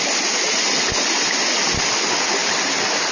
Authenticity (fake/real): real